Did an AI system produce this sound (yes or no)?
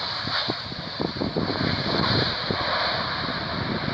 no